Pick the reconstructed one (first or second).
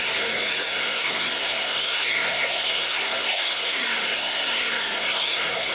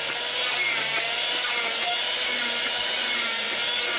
first